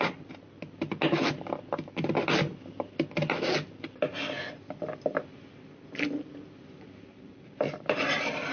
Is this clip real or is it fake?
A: real